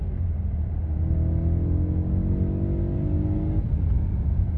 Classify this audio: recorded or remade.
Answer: recorded